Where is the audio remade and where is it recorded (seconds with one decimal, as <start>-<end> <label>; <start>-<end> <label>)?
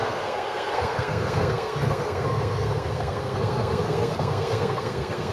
0.0-5.3 remade